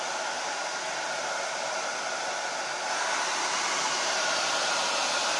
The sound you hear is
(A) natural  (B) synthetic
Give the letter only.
A